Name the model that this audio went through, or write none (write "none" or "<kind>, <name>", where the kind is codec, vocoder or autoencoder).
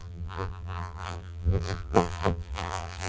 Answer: vocoder, BigVGAN v2